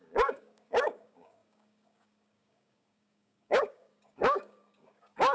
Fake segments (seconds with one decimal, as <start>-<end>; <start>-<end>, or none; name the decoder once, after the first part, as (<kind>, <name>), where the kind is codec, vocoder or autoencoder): 0.0-5.3 (codec, DAC)